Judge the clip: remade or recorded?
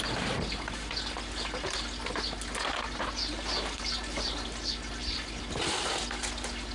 recorded